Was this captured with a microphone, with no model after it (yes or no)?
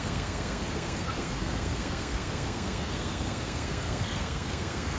no